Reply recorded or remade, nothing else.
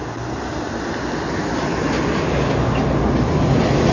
recorded